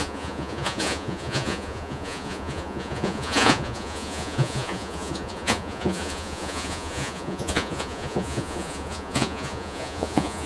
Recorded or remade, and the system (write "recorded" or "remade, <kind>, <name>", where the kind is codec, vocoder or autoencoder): remade, vocoder, Vocos